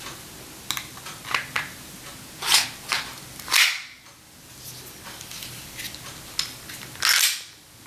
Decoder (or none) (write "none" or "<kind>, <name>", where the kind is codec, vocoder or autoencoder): none